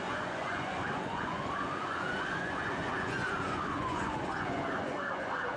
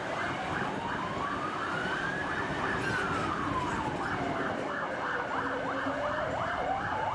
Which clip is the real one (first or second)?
second